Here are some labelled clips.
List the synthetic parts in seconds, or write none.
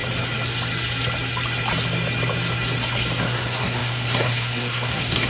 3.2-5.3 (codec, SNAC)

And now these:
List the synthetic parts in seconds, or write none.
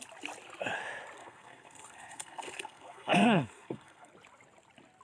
1.2-4.1 (codec, SNAC)